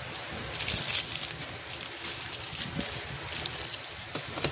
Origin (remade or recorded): recorded